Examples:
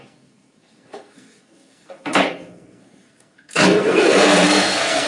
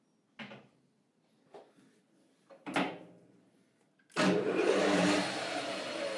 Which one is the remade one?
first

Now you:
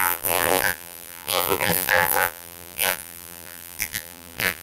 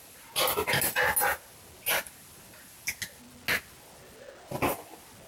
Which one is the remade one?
first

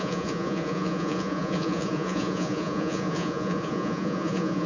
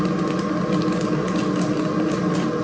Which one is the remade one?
first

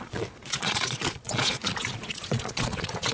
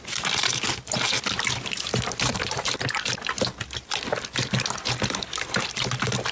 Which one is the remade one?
first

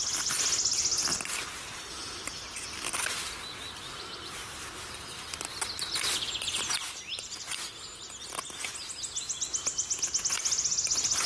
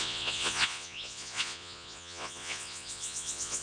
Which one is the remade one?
second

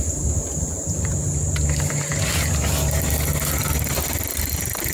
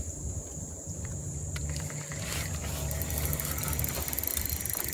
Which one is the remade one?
second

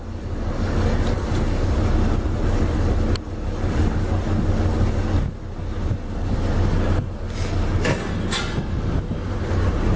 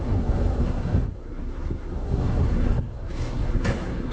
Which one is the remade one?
second